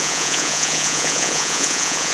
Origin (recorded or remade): remade